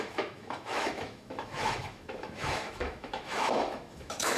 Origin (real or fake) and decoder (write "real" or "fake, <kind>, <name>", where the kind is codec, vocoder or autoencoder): fake, autoencoder, DAC-VAE